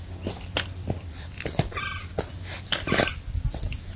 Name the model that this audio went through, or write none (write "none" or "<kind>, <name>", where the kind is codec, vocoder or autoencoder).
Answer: none